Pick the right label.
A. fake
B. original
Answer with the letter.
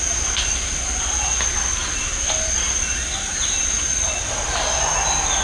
B